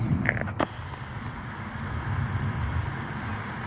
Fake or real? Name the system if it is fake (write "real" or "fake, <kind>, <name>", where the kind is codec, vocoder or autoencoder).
fake, vocoder, BigVGAN v2